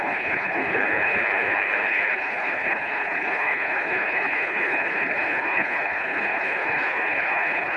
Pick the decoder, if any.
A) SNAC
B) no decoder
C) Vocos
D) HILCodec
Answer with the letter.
D